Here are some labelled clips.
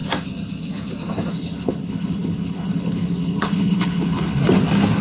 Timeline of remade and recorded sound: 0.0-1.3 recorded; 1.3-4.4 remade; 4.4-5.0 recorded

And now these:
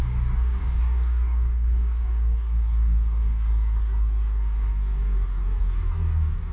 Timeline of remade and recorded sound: 0.0-6.5 remade

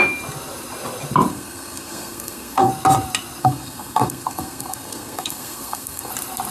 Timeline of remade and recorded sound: 0.0-1.3 recorded; 1.3-2.7 remade; 2.7-3.4 recorded; 3.4-6.1 remade; 6.1-6.5 recorded

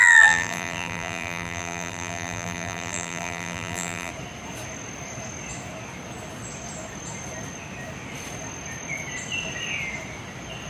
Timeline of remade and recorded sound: 0.0-4.1 remade; 4.1-10.7 recorded

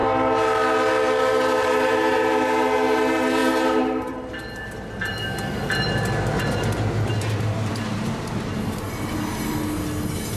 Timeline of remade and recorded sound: 0.0-1.2 recorded; 1.2-5.1 remade; 5.1-10.4 recorded

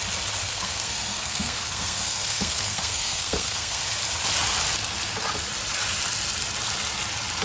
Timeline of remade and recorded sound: 0.0-0.4 recorded; 0.4-3.8 remade; 3.8-7.4 recorded

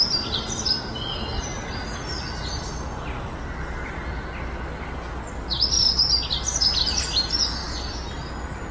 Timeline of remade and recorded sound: 0.0-8.7 recorded

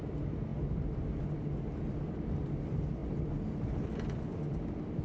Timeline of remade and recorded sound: 0.0-5.0 recorded